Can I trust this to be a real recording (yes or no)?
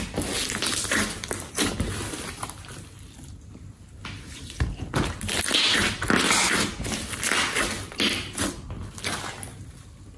yes